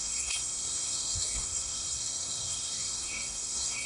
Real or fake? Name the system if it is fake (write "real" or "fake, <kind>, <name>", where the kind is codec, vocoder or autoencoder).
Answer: fake, codec, SNAC